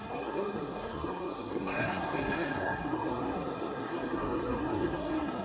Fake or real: fake